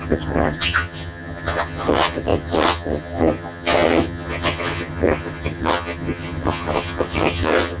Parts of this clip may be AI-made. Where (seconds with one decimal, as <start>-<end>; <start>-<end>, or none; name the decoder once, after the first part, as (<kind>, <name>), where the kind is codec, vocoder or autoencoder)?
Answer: 0.0-7.8 (vocoder, HiFi-GAN)